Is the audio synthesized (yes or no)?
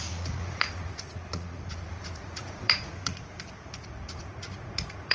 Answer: yes